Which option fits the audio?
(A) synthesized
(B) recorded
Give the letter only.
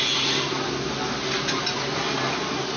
B